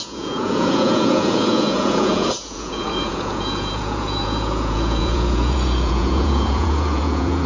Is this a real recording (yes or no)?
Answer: no